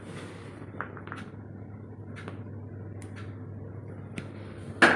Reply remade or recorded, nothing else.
recorded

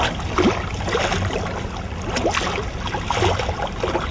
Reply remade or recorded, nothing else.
recorded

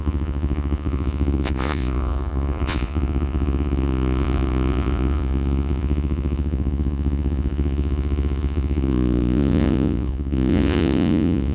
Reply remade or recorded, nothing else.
remade